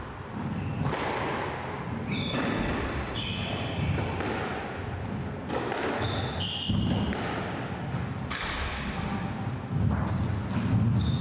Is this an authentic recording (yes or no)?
yes